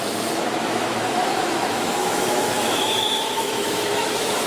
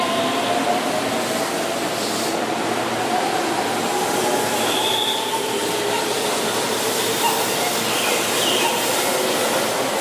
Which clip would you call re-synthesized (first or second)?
first